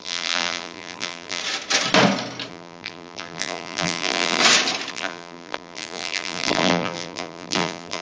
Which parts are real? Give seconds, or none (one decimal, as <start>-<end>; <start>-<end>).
1.4-2.5; 4.4-4.9